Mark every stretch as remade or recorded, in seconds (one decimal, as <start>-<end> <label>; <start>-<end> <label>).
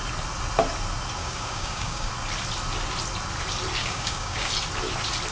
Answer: 0.0-1.2 recorded; 1.2-2.1 remade; 2.1-3.8 recorded; 3.8-4.5 remade; 4.5-5.3 recorded